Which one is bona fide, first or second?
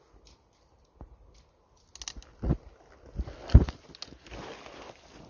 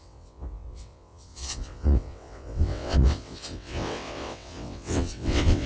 first